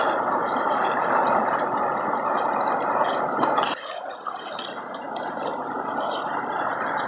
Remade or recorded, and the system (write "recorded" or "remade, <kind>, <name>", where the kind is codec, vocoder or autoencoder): remade, vocoder, BigVGAN v2